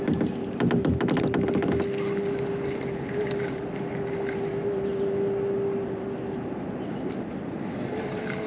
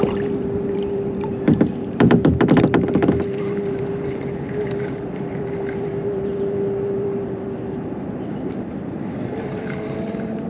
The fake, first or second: second